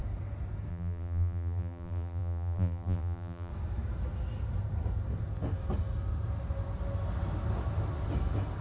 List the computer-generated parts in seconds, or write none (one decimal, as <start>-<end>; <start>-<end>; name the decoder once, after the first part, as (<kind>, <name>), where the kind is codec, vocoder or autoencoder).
0.7-3.5 (vocoder, BigVGAN v2)